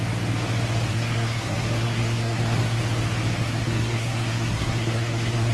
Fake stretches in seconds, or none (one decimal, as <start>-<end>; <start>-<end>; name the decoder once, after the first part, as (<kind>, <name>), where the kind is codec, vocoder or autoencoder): 0.9-2.8 (codec, SNAC); 3.4-5.5